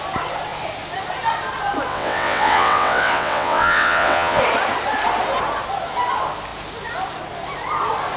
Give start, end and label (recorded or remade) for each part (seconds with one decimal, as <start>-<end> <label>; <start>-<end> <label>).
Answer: 0.0-1.9 recorded; 1.9-4.4 remade; 4.4-8.2 recorded